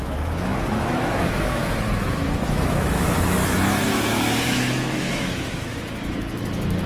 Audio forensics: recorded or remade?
remade